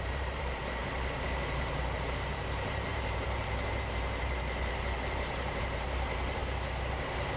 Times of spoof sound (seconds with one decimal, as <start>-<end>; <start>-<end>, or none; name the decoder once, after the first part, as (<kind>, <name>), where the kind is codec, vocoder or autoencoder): 0.0-0.8 (vocoder, BigVGAN v2); 1.4-6.4; 6.9-7.4